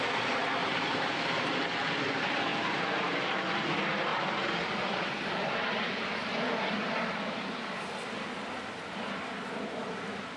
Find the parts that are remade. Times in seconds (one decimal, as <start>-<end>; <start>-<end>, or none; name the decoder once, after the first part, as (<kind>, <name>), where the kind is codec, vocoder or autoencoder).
0.6-1.7 (vocoder, BigVGAN v2); 2.5-3.4; 4.1-5.8